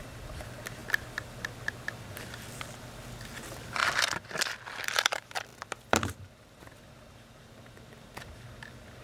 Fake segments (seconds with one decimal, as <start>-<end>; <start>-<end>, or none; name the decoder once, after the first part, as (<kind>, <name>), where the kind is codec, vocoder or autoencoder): 3.8-4.4 (vocoder, BigVGAN v2); 5.5-7.6